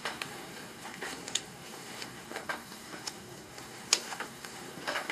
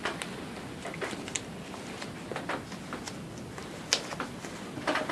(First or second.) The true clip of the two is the second